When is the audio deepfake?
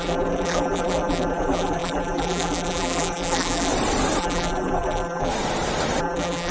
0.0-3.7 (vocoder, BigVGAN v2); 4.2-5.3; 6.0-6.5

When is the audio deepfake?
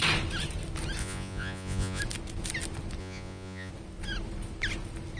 1.0-2.0 (vocoder, Vocos); 3.0-3.7